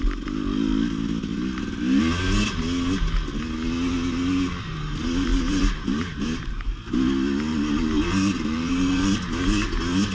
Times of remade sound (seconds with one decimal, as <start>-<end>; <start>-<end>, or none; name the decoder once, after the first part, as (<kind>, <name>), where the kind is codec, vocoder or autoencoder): 5.3-6.7 (vocoder, BigVGAN v2); 7.5-9.2